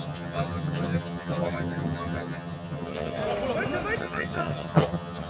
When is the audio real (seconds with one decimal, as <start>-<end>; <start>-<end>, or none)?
3.2-4.0